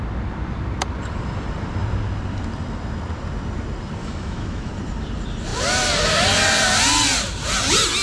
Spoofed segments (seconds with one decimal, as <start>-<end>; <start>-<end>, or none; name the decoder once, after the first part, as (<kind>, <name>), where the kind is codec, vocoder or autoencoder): 4.0-4.7 (autoencoder, DAC-VAE)